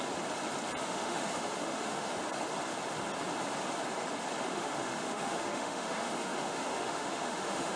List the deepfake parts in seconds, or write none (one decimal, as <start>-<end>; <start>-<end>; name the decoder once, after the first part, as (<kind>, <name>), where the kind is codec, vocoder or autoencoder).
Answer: 0.8-2.1 (autoencoder, DAC-VAE); 4.5-7.8